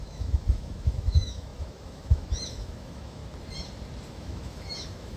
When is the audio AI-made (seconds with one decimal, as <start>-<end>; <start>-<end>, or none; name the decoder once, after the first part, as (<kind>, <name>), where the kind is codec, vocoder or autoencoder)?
0.0-3.2 (autoencoder, DAC-VAE); 4.1-5.2